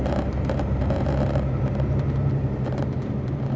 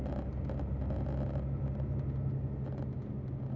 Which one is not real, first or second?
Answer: first